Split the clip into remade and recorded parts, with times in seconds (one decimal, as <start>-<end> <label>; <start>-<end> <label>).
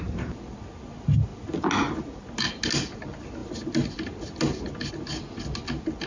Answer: 0.0-6.1 recorded